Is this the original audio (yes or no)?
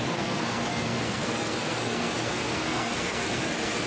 no